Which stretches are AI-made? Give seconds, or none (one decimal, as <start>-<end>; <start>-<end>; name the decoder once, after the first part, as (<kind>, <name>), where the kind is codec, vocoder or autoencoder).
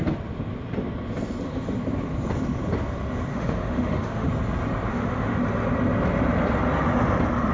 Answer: 3.3-4.3 (autoencoder, DAC-VAE); 4.9-5.4